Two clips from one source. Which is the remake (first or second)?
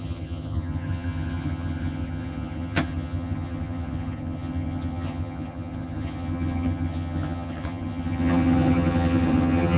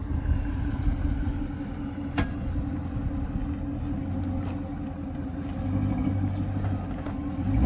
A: first